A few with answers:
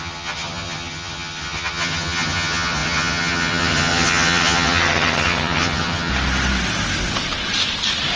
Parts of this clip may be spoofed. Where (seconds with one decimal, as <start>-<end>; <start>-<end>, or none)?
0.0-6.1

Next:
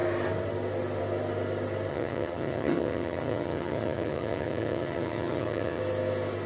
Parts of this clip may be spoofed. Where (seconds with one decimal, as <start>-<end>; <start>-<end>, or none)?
1.9-5.8

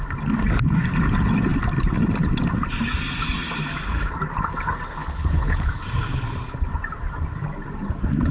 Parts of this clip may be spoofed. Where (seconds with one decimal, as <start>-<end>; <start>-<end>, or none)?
5.0-5.7

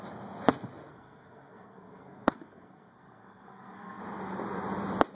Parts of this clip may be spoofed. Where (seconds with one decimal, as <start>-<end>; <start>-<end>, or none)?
0.9-4.0